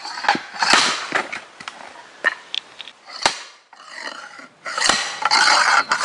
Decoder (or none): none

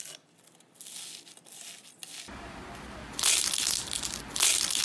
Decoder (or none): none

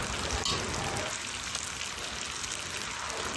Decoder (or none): none